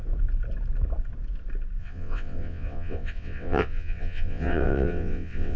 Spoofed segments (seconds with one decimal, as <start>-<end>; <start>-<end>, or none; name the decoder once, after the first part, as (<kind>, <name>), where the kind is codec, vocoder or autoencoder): 1.8-5.6 (vocoder, WaveNeXt)